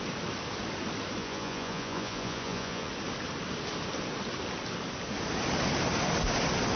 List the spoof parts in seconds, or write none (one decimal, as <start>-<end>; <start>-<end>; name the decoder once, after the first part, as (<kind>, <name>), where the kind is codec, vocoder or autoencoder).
1.2-2.9 (vocoder, Vocos)